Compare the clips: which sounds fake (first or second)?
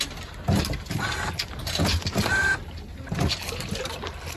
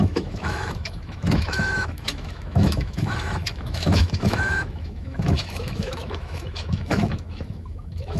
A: second